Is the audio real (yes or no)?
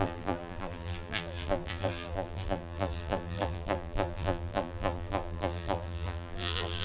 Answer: no